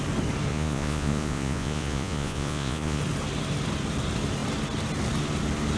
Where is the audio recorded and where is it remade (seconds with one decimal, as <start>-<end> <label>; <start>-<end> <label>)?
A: 0.0-0.5 recorded; 0.5-3.0 remade; 3.0-5.8 recorded